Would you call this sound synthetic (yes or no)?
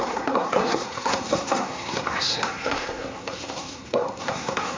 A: yes